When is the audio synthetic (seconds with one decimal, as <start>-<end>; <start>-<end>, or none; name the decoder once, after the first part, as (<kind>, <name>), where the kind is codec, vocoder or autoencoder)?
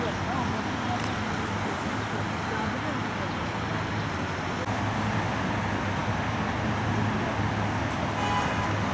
none